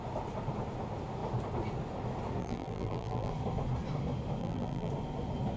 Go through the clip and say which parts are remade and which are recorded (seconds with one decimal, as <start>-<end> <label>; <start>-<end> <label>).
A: 0.0-2.4 recorded; 2.4-3.3 remade; 3.3-4.4 recorded; 4.4-4.9 remade; 4.9-5.6 recorded